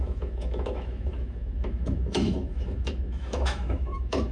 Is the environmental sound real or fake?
fake